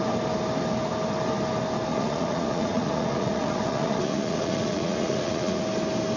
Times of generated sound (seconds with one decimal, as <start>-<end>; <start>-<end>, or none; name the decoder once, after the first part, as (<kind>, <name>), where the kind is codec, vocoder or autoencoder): 1.9-5.6 (vocoder, Vocos)